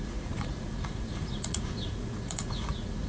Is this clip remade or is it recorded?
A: remade